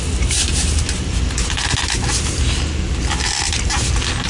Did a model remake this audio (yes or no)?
no